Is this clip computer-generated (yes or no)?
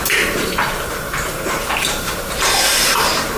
yes